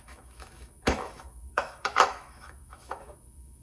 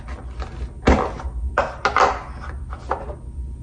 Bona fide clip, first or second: second